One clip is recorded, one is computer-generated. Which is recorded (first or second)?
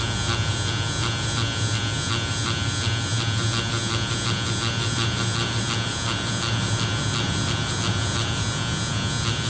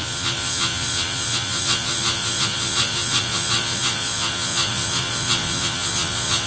first